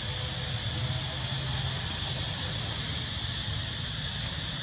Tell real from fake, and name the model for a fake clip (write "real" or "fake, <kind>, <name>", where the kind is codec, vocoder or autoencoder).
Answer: real